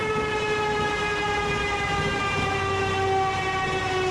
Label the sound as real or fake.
real